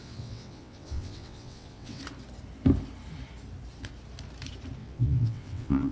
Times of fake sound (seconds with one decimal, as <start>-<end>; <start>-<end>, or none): 0.0-2.0; 4.8-5.9